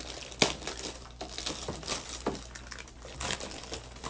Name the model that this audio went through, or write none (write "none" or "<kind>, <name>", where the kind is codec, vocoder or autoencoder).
none